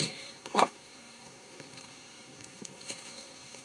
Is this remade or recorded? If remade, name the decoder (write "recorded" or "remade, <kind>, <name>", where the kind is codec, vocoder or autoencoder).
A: remade, codec, SNAC